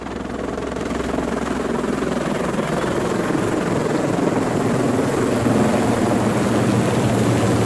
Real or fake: real